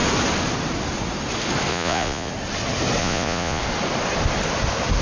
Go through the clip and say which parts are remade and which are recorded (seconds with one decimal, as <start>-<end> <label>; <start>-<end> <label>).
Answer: 0.0-1.7 recorded; 1.7-2.3 remade; 2.3-3.0 recorded; 3.0-3.6 remade; 3.6-5.0 recorded